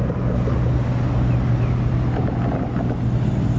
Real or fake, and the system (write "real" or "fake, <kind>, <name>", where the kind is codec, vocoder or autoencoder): real